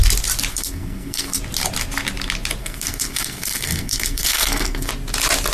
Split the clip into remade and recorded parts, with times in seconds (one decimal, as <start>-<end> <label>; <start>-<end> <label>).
0.0-0.5 recorded; 0.5-1.4 remade; 1.4-2.6 recorded; 2.6-4.9 remade; 4.9-5.5 recorded